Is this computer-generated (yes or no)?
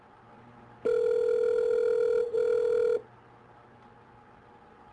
no